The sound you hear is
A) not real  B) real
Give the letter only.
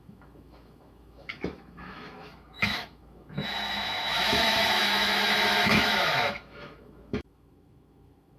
A